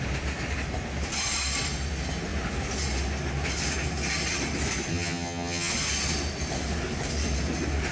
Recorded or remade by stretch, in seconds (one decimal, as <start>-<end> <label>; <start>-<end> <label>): 0.0-4.9 recorded; 4.9-5.7 remade; 5.7-7.9 recorded